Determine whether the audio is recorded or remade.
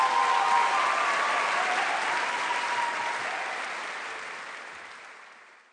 recorded